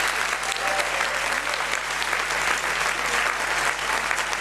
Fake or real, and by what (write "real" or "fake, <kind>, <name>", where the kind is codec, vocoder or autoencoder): real